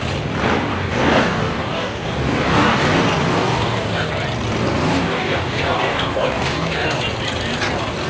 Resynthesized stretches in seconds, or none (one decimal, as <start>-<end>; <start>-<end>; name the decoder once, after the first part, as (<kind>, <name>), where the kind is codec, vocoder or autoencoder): 0.7-2.8 (codec, DAC); 3.3-4.1; 4.9-7.0